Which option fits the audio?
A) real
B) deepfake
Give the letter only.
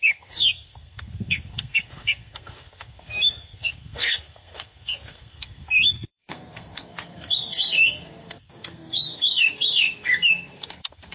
B